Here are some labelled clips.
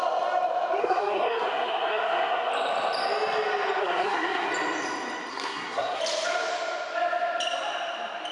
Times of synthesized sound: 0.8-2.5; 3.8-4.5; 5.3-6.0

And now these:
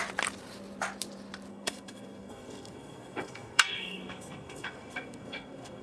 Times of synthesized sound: 1.5-5.8

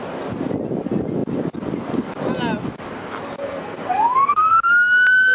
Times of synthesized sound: 3.4-4.7

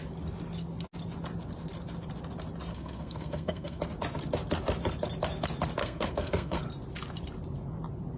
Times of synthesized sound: 2.7-3.8; 5.8-6.6

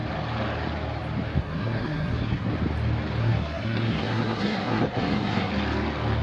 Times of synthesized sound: 1.4-2.5; 3.2-5.5

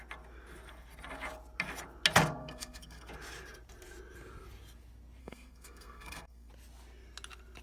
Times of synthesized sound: 2.4-3.1; 5.2-6.5

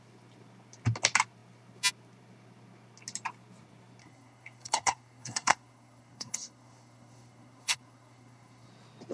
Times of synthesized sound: 4.0-8.7